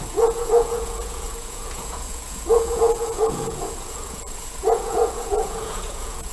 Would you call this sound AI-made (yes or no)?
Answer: yes